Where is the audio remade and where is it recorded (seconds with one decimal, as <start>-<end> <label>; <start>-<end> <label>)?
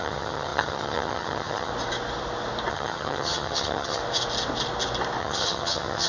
0.0-1.7 remade; 1.7-2.7 recorded; 2.7-4.0 remade; 4.0-5.2 recorded; 5.2-6.1 remade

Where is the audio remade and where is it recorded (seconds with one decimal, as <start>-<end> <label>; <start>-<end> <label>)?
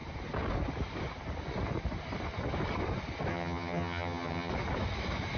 0.0-3.3 recorded; 3.3-4.5 remade; 4.5-5.4 recorded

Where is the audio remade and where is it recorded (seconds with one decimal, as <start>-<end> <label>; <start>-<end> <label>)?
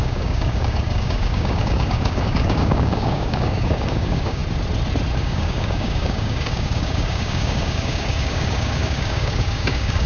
0.0-4.4 remade; 4.4-5.2 recorded; 5.2-10.1 remade